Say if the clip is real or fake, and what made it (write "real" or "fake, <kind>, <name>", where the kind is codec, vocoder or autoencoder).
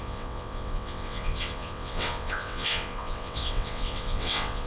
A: fake, vocoder, WaveNeXt